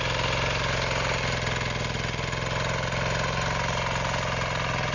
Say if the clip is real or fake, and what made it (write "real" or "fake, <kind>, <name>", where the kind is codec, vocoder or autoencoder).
real